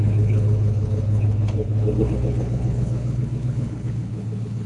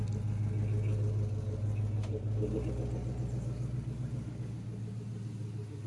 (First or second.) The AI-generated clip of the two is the first